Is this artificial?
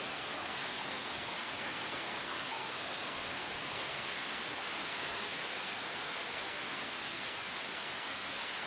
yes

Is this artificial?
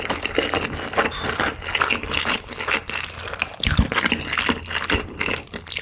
no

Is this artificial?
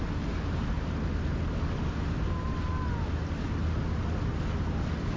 no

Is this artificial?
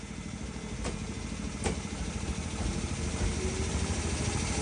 no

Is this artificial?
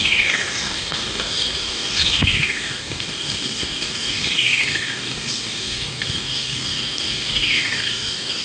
yes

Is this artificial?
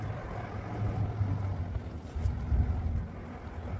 no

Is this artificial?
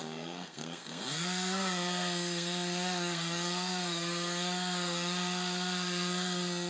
yes